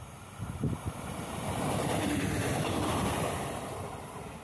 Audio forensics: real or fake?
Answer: real